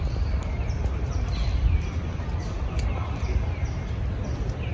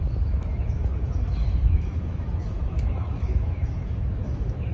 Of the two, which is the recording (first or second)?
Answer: first